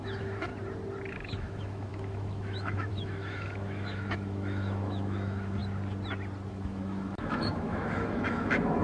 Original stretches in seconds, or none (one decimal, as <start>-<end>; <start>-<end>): 0.5-1.1; 5.6-6.5